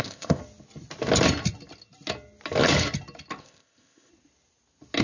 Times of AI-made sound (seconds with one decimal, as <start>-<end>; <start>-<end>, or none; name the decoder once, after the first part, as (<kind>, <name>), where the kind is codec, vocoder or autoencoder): 0.0-0.4 (codec, ZipCodec); 3.4-4.1